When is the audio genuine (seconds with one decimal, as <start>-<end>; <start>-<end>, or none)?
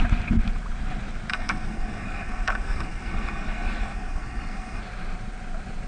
0.0-1.3; 4.8-5.9